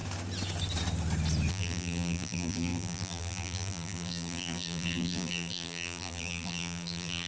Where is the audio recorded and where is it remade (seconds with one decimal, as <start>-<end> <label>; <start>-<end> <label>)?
0.0-1.5 recorded; 1.5-7.3 remade